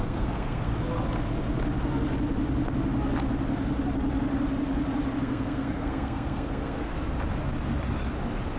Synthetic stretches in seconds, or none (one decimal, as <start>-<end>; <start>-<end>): 0.0-0.7; 5.2-6.9